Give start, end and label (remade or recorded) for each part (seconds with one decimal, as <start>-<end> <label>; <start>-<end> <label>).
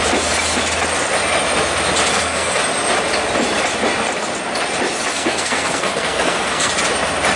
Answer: 0.0-2.1 recorded; 2.1-2.6 remade; 2.6-5.1 recorded; 5.1-6.7 remade; 6.7-7.4 recorded